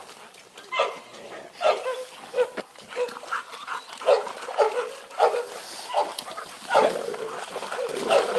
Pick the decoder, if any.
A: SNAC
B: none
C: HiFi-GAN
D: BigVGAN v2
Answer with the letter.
B